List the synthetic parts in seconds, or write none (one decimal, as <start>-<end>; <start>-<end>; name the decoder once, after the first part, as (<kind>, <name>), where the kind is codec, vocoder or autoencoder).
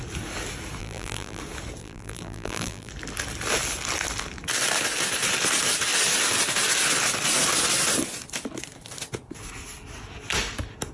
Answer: 0.8-1.4 (vocoder, BigVGAN v2); 1.8-2.9